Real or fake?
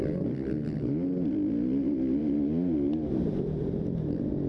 real